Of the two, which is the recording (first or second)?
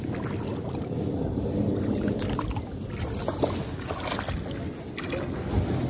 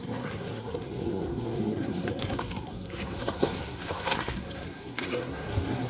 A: first